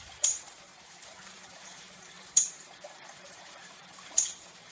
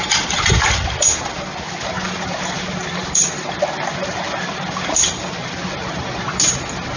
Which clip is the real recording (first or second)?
second